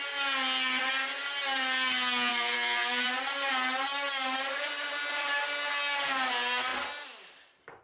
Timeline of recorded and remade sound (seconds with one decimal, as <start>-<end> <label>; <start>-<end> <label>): 0.0-2.3 recorded; 2.3-3.5 remade; 3.5-7.8 recorded